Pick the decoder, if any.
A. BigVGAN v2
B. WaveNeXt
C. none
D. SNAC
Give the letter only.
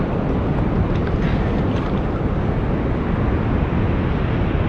C